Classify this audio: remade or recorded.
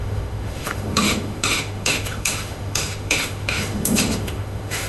remade